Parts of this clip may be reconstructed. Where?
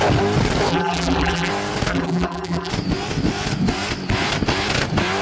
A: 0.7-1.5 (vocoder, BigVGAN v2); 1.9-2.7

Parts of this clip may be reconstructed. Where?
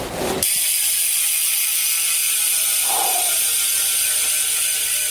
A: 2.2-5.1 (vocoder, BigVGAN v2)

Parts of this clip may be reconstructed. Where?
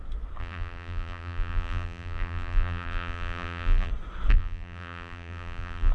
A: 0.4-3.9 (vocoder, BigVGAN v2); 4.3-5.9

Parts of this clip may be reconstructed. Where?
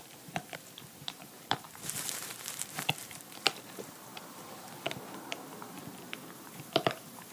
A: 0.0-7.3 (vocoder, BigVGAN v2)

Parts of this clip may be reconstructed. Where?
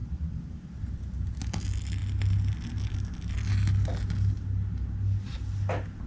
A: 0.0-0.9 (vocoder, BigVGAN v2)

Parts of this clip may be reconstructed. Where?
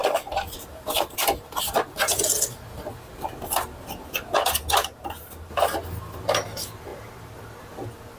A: 0.0-2.1 (vocoder, BigVGAN v2); 4.8-5.5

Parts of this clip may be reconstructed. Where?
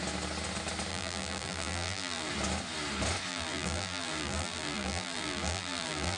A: 0.9-2.3 (vocoder, BigVGAN v2); 3.3-6.2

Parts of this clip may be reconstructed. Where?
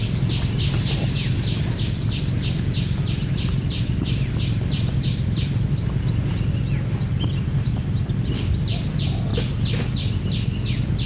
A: 0.0-11.1 (vocoder, BigVGAN v2)